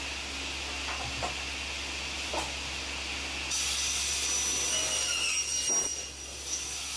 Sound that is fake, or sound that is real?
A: real